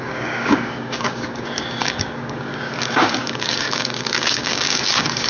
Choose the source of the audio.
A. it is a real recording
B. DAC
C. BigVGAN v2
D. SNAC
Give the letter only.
B